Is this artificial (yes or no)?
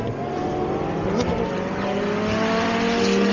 no